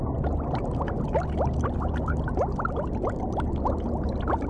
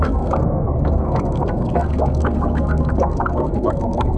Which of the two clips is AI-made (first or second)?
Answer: second